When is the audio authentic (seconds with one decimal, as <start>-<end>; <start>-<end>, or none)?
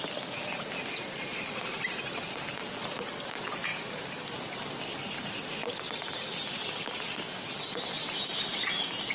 0.0-9.1